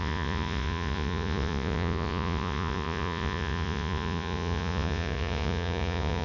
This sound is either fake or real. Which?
fake